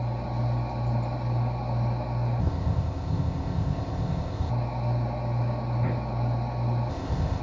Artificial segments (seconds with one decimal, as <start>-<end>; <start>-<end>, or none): 2.4-4.5; 6.9-7.4